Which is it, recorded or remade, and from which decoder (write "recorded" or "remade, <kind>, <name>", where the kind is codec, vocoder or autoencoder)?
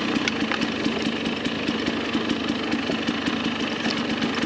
recorded